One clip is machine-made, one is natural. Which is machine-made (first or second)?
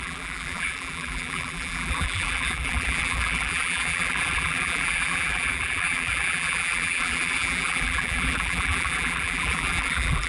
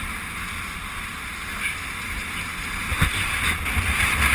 first